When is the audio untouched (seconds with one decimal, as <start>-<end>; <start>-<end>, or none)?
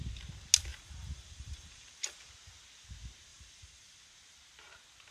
0.0-0.7; 2.2-3.3; 4.0-5.1